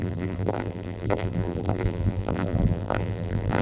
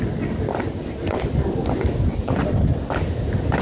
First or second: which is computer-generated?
first